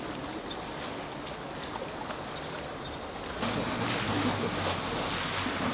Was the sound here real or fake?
real